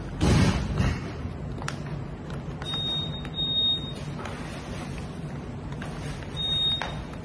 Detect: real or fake real